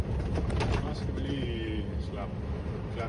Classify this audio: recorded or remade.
recorded